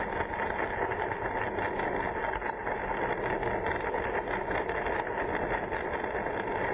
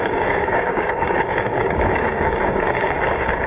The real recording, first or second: first